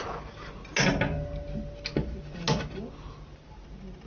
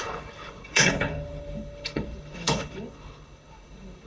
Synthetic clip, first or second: second